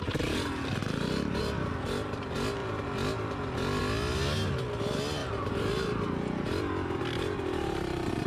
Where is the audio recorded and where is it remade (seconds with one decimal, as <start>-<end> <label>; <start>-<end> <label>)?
0.0-2.6 recorded; 2.6-3.8 remade; 3.8-5.2 recorded; 5.2-7.0 remade; 7.0-8.3 recorded